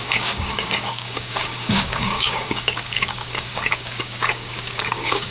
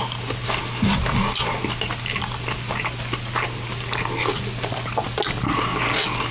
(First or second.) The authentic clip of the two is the second